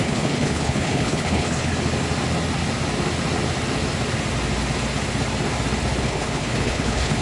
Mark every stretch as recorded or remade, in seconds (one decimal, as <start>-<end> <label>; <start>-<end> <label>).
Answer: 0.0-1.7 remade; 1.7-6.0 recorded; 6.0-7.2 remade